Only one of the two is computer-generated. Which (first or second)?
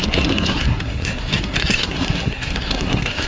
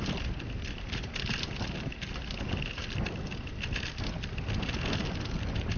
first